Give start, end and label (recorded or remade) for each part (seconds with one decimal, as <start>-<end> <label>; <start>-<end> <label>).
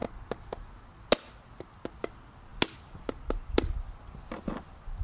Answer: 0.0-5.0 recorded